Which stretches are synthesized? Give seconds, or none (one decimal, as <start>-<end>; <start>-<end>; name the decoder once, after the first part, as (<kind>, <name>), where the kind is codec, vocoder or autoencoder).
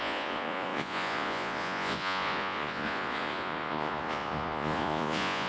0.0-5.5 (vocoder, Vocos)